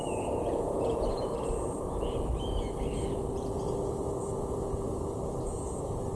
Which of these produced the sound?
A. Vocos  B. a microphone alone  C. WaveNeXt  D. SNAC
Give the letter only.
A